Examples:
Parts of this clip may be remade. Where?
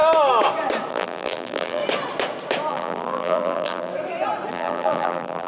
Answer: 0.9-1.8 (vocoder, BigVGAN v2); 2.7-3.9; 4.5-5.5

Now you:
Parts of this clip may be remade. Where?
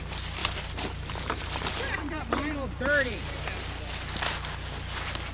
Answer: 0.4-3.3 (vocoder, BigVGAN v2)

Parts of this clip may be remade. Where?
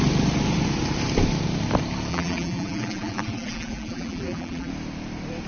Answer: 2.1-4.7 (vocoder, BigVGAN v2)